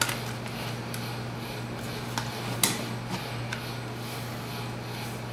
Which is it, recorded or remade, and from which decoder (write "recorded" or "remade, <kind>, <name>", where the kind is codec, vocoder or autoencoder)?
recorded